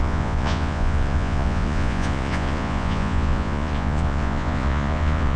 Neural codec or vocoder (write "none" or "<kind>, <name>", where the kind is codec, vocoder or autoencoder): vocoder, Vocos